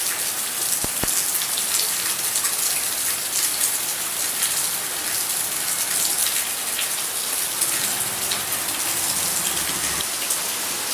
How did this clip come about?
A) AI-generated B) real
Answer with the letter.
B